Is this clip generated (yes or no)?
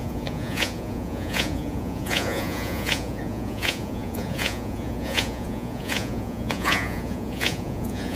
yes